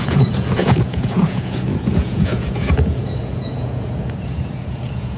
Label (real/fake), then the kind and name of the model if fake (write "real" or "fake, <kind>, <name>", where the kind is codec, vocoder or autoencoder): fake, vocoder, Vocos